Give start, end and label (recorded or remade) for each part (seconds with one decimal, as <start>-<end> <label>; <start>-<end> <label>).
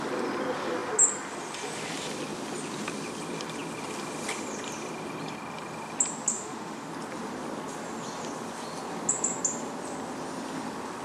0.0-6.3 recorded; 6.3-6.9 remade; 6.9-11.0 recorded